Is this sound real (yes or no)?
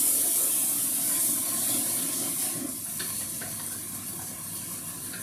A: yes